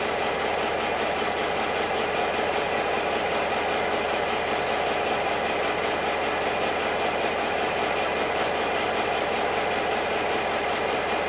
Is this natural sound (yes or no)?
yes